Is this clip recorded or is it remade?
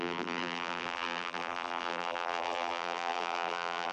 remade